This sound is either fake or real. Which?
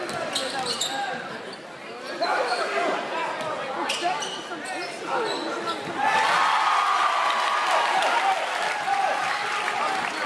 real